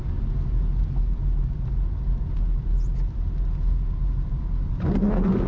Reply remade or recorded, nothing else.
recorded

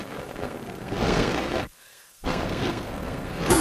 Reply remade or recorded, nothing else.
remade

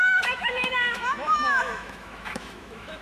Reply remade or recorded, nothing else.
remade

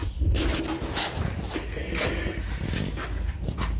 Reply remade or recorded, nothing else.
recorded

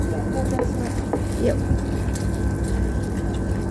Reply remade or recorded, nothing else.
recorded